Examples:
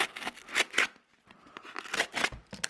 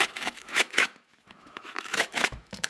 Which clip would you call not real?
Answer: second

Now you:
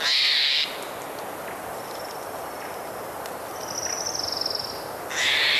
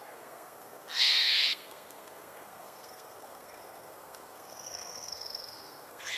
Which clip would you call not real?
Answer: second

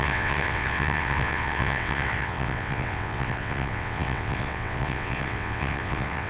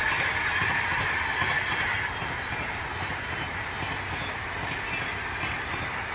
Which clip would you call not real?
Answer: first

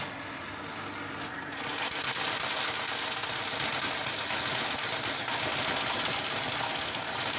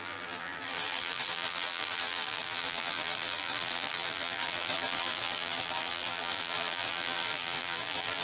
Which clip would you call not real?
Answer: second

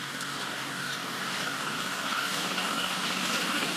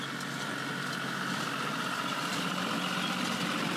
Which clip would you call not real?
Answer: first